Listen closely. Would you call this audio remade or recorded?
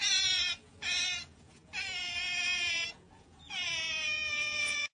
remade